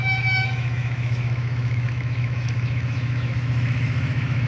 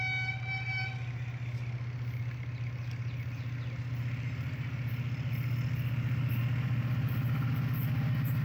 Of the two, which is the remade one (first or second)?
first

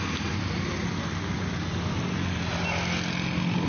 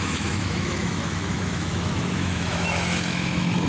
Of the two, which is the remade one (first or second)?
second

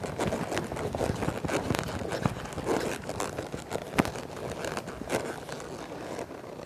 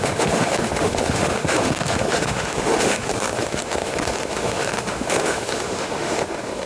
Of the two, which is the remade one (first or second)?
second